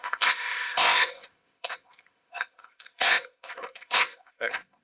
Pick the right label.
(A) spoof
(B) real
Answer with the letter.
A